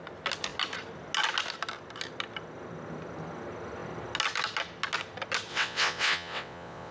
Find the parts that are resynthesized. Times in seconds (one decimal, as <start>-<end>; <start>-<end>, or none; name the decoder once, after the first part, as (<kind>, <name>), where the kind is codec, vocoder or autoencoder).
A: 5.5-6.9 (vocoder, WaveNeXt)